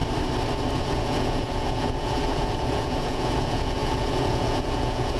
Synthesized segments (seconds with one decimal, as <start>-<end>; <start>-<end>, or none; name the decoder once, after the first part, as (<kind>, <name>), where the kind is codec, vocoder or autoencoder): 0.7-5.2 (vocoder, Vocos)